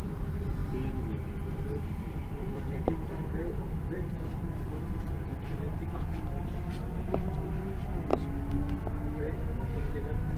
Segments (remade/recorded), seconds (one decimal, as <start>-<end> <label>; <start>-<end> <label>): 0.0-8.1 remade; 8.1-9.9 recorded; 9.9-10.4 remade